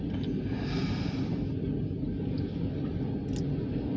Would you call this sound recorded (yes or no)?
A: yes